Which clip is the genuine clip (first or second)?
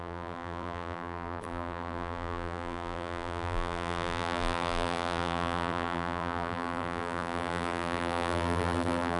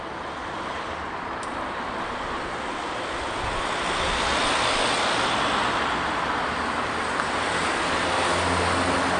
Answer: second